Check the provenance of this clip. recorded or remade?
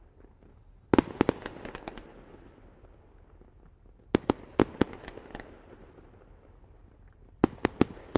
recorded